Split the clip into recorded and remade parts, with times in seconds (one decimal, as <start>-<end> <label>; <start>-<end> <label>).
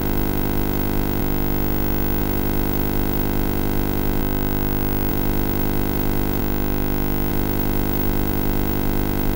0.0-1.2 remade; 1.2-2.2 recorded; 2.2-4.2 remade; 4.2-5.1 recorded; 5.1-6.4 remade; 6.4-7.3 recorded; 7.3-9.4 remade